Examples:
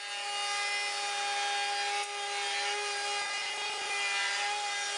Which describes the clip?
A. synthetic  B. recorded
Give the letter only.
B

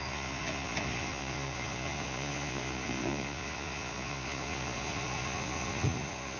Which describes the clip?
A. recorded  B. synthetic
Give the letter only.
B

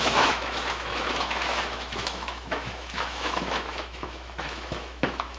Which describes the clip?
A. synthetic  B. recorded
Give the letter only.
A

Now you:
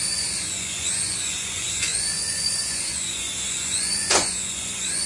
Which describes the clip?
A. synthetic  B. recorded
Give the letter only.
A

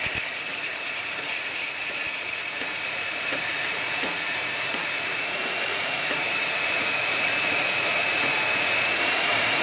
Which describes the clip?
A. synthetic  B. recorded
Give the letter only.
A